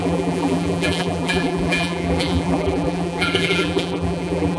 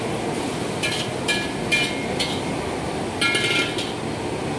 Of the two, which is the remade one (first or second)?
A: first